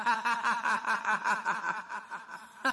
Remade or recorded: remade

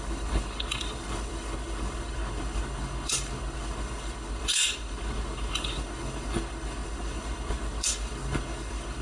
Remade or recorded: remade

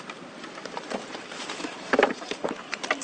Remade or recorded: remade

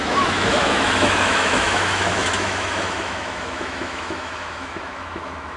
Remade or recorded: remade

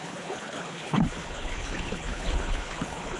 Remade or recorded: remade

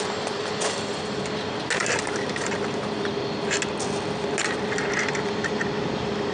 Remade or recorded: recorded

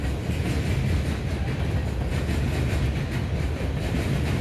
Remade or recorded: recorded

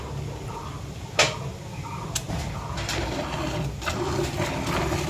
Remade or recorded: recorded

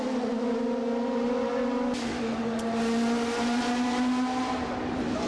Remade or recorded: recorded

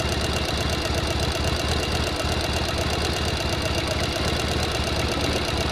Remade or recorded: recorded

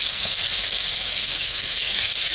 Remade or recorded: remade